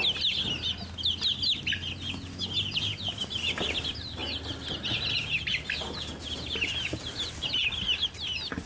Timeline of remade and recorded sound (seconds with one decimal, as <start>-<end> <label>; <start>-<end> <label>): 0.0-8.7 recorded